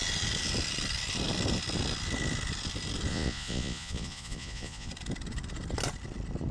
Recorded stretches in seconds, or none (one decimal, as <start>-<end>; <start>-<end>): 0.0-3.1; 4.9-6.5